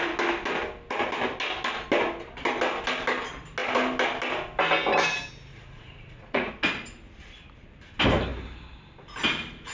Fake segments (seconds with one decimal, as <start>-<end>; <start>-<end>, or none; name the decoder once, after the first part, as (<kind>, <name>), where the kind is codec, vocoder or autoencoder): 5.5-6.5 (vocoder, Vocos)